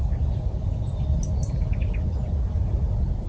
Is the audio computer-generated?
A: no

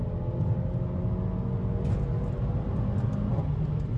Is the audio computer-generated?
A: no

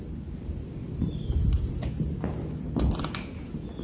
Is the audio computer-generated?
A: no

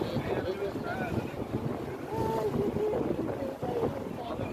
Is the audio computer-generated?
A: no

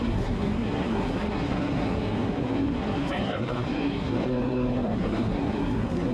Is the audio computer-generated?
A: yes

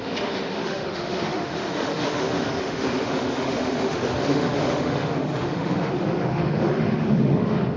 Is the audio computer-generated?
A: yes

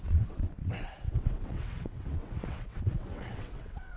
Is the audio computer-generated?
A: yes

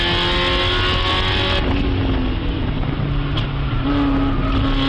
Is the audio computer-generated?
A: no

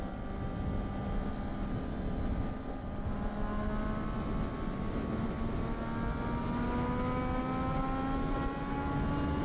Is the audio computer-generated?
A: no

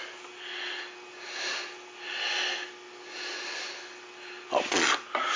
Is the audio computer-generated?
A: no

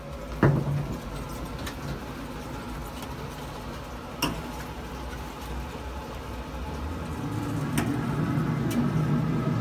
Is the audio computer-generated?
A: no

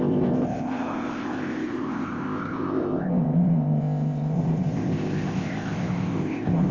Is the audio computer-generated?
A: yes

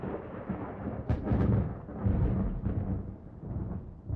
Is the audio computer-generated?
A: no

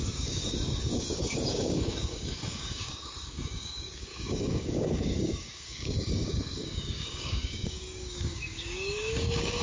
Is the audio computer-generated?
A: yes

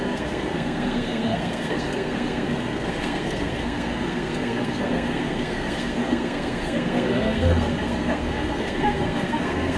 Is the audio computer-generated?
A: yes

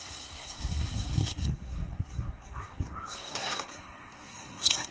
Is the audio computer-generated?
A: yes